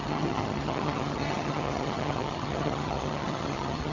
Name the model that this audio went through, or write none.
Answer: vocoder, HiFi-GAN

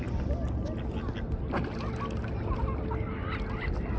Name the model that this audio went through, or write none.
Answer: none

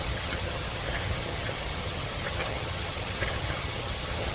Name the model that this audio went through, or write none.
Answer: vocoder, HiFi-GAN